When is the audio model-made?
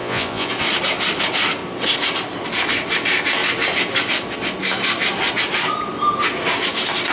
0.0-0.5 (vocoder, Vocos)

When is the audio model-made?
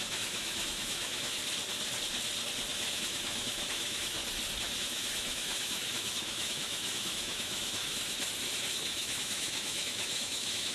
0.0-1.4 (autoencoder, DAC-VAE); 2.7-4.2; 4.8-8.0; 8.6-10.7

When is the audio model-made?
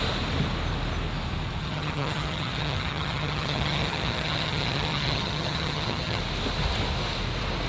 1.6-6.2 (vocoder, HiFi-GAN)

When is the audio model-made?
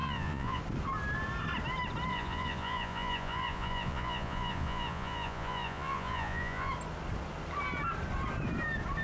0.0-0.6 (vocoder, Vocos); 2.1-6.7